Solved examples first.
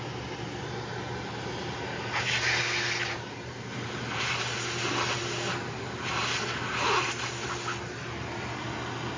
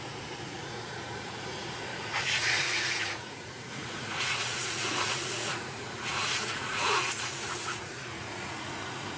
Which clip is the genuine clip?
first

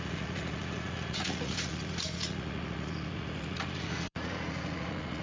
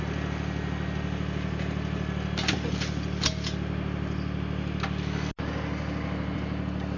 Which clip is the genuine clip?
second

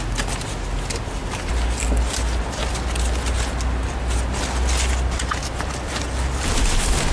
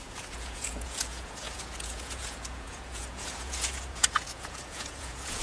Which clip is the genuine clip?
first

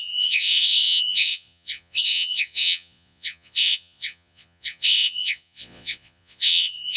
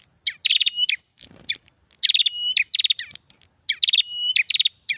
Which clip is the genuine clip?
second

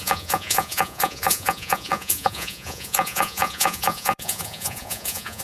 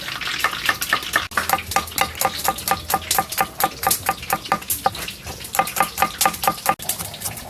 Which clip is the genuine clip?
second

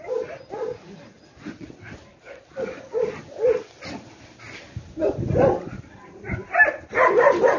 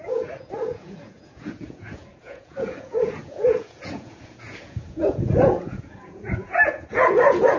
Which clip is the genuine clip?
first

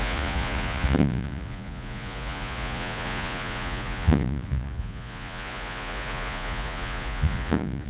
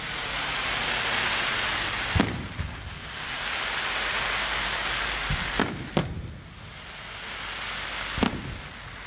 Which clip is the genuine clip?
second